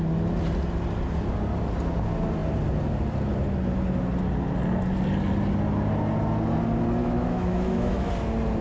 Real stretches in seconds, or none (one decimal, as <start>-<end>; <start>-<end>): 0.0-7.0; 8.1-8.6